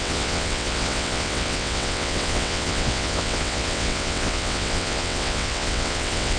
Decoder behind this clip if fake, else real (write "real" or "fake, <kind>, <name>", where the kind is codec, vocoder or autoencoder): fake, vocoder, WaveNeXt